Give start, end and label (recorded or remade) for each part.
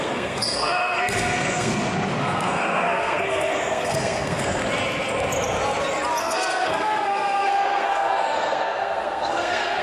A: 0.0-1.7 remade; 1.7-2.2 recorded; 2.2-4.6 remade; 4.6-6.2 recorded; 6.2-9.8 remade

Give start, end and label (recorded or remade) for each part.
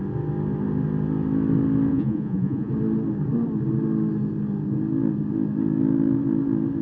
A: 0.0-1.9 recorded; 1.9-2.7 remade; 2.7-6.8 recorded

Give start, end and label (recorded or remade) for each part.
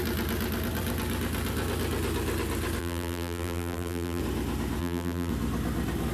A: 0.0-2.8 recorded; 2.8-4.2 remade; 4.2-4.8 recorded; 4.8-5.3 remade; 5.3-6.1 recorded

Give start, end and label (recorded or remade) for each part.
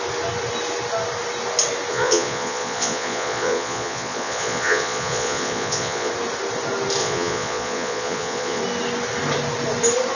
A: 0.0-1.9 recorded; 1.9-6.1 remade; 6.1-7.0 recorded; 7.0-8.6 remade; 8.6-10.2 recorded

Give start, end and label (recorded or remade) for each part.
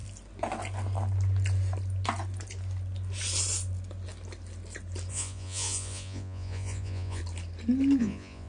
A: 0.0-5.1 recorded; 5.1-7.2 remade; 7.2-8.0 recorded; 8.0-8.5 remade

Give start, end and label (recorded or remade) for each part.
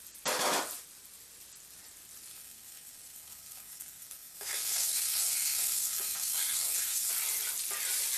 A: 0.0-2.3 recorded; 2.3-7.1 remade; 7.1-8.2 recorded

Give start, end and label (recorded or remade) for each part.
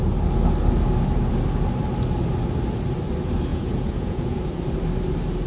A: 0.0-3.5 recorded; 3.5-4.4 remade; 4.4-5.5 recorded